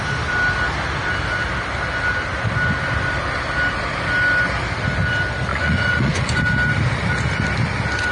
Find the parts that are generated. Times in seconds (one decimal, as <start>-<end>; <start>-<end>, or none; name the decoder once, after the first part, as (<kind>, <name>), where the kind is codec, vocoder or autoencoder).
5.5-6.4 (vocoder, Vocos)